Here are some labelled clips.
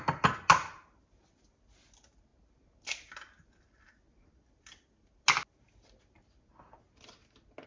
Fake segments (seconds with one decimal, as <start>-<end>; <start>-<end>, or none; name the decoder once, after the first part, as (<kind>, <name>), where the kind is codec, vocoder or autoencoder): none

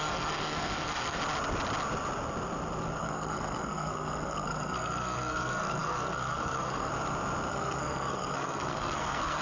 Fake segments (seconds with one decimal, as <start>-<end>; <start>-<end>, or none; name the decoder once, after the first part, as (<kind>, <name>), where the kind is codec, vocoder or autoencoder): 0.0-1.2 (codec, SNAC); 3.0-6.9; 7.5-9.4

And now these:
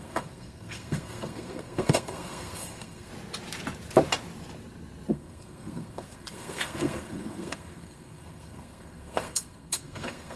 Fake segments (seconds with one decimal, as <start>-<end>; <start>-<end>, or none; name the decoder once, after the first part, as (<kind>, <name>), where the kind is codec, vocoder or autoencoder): 0.0-3.1 (codec, SNAC); 5.1-10.4

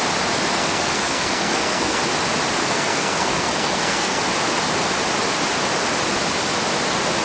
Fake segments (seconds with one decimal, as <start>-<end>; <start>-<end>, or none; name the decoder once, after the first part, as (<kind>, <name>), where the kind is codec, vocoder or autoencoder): 0.6-2.0 (codec, SNAC); 2.6-4.2

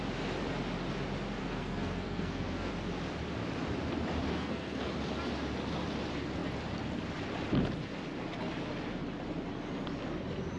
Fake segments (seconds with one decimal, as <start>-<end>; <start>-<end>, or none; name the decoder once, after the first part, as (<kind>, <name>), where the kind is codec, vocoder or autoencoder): 1.4-2.7 (codec, SNAC); 4.3-4.9

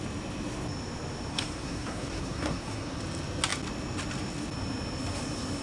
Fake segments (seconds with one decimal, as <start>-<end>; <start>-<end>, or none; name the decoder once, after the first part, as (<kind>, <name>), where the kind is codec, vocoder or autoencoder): 1.3-3.0 (codec, SNAC)